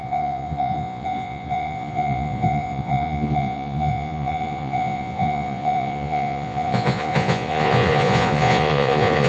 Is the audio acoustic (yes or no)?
no